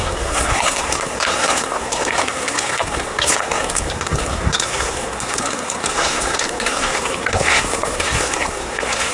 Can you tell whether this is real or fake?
fake